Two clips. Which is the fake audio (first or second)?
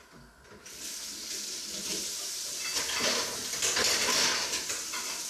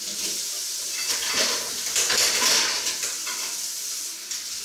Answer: second